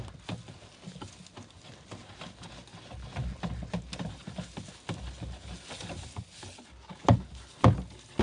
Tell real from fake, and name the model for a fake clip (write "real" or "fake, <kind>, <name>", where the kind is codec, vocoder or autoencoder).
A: real